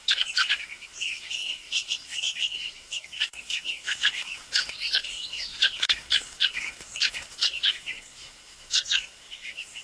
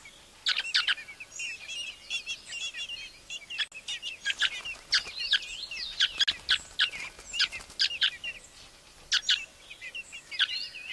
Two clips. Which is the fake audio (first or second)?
first